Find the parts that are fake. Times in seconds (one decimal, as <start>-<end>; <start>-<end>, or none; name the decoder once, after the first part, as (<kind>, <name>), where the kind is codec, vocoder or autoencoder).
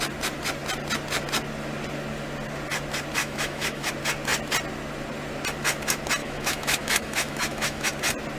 3.2-3.9 (autoencoder, DAC-VAE); 6.2-7.9